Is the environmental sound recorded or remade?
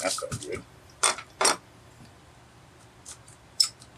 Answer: remade